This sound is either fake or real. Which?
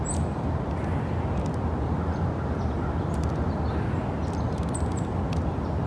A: real